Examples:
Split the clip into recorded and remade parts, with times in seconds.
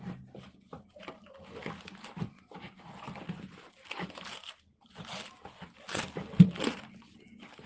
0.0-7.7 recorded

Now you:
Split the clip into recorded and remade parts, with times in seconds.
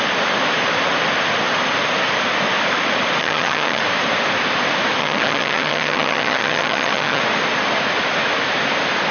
0.0-3.2 recorded; 3.2-3.8 remade; 3.8-5.0 recorded; 5.0-7.2 remade; 7.2-9.1 recorded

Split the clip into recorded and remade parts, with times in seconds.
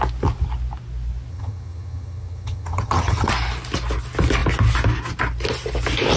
0.0-1.3 recorded; 1.3-3.3 remade; 3.3-6.2 recorded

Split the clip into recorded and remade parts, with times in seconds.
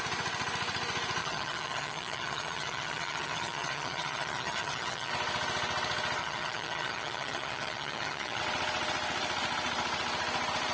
0.0-1.2 recorded; 1.2-5.1 remade; 5.1-6.2 recorded; 6.2-8.4 remade; 8.4-10.7 recorded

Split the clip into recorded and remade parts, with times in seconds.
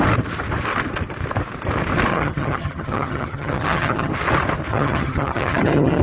0.0-2.1 recorded; 2.1-4.1 remade; 4.1-4.7 recorded; 4.7-6.0 remade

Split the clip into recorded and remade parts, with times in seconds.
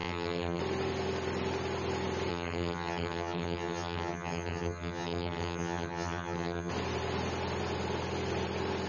0.0-0.6 remade; 0.6-2.3 recorded; 2.3-6.7 remade; 6.7-8.9 recorded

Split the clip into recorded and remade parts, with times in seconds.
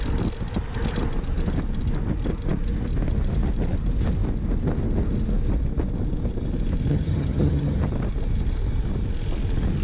0.0-6.9 recorded; 6.9-7.9 remade; 7.9-9.8 recorded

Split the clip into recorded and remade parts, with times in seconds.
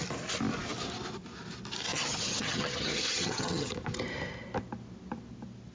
0.0-1.9 recorded; 1.9-3.7 remade; 3.7-5.7 recorded